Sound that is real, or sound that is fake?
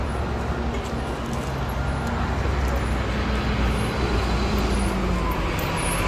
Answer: real